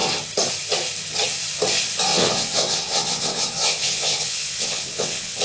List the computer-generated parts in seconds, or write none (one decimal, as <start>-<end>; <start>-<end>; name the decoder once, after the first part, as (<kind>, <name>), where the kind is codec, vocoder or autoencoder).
2.1-5.4 (vocoder, WaveNeXt)